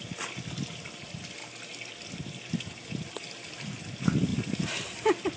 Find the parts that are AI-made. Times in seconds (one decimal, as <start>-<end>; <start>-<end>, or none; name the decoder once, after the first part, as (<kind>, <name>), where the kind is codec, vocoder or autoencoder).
1.4-2.5 (vocoder, BigVGAN v2); 4.3-5.4